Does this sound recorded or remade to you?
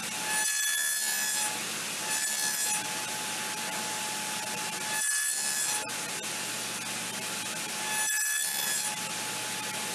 recorded